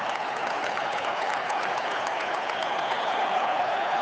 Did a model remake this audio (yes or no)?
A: yes